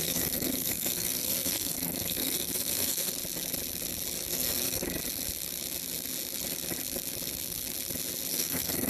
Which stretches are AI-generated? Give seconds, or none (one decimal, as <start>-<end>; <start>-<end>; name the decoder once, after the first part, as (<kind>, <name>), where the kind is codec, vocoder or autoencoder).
0.0-3.1 (codec, SNAC); 4.3-4.8; 8.3-8.9